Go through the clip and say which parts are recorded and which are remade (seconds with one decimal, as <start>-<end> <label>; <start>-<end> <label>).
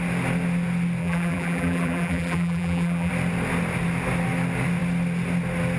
0.0-1.0 recorded; 1.0-3.1 remade; 3.1-5.8 recorded